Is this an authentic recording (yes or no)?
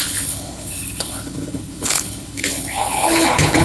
no